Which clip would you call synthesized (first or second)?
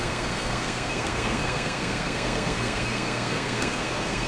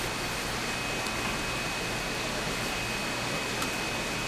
first